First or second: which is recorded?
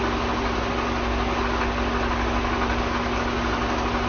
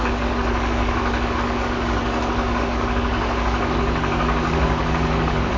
first